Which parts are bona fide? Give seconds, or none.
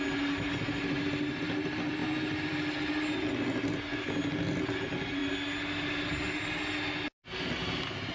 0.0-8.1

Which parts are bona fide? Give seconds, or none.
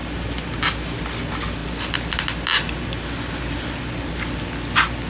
0.0-5.1